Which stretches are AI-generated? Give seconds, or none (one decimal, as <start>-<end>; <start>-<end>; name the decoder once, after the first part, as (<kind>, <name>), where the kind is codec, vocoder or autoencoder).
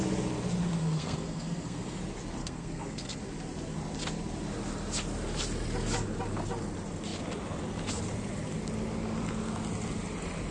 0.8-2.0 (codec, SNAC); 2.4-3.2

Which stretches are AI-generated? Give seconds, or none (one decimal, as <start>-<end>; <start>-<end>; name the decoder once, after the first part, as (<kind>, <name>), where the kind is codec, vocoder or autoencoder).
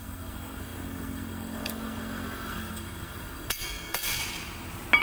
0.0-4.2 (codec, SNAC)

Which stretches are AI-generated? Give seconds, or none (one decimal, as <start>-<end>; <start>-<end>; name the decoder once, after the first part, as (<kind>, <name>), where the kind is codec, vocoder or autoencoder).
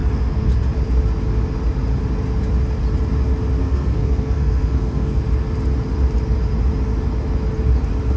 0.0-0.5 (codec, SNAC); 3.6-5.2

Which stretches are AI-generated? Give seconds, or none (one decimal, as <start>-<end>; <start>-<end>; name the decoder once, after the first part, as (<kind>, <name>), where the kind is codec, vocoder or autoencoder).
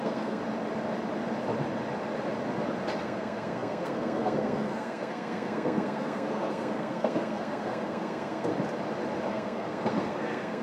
0.0-0.4 (codec, SNAC); 3.0-8.5; 9.3-10.6